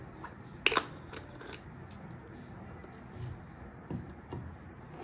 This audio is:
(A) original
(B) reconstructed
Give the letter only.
A